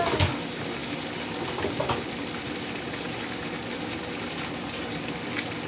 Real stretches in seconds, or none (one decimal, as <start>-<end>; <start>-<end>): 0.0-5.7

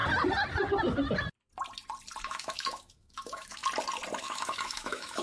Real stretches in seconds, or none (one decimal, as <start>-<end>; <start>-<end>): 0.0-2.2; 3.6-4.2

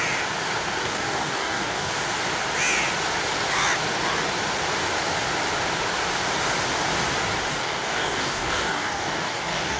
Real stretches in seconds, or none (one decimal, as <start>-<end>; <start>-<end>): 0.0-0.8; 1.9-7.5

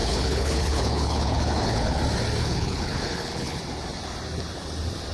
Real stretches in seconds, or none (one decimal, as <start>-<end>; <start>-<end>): 2.0-2.4; 3.6-5.1

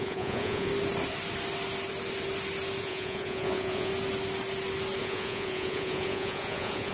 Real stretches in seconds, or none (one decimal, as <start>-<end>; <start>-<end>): 0.7-2.8; 3.9-5.0

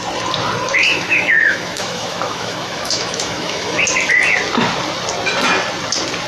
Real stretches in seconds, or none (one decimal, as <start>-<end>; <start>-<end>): 0.0-0.8; 3.8-6.3

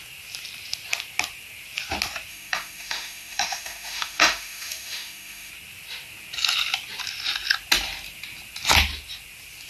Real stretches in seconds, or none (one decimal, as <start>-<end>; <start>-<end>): 0.0-2.3; 5.5-9.7

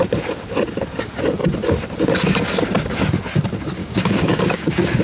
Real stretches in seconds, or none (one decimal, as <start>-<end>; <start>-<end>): 0.0-3.8